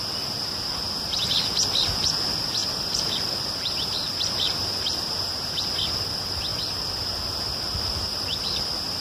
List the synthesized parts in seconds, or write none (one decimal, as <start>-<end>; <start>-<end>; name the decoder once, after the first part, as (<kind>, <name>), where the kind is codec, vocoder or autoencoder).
2.6-5.3 (vocoder, BigVGAN v2)